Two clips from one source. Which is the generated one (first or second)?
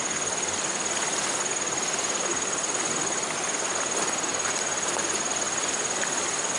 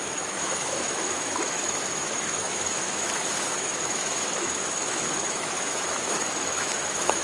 second